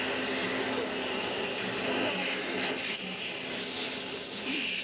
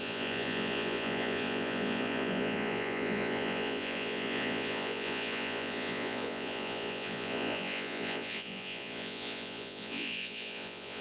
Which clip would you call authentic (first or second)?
first